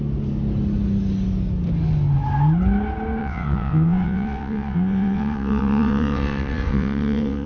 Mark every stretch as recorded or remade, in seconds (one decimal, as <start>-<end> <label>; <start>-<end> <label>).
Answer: 0.0-3.2 recorded; 3.2-7.5 remade